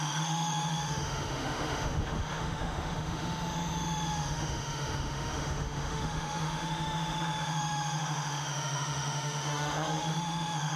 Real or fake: fake